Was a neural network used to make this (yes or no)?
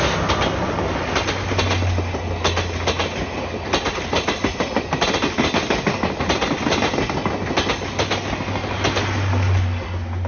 no